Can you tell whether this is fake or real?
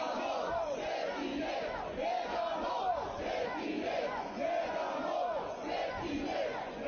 fake